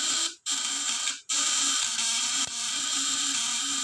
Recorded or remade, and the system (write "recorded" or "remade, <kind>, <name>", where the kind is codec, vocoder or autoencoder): remade, vocoder, BigVGAN v2